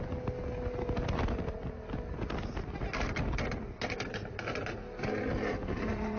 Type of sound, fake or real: real